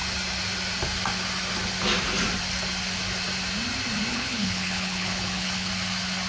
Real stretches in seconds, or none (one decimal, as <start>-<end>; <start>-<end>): 0.0-4.1; 5.7-6.3